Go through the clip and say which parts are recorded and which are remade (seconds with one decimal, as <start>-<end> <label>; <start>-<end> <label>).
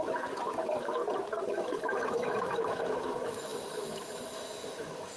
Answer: 0.0-1.0 remade; 1.0-1.5 recorded; 1.5-5.2 remade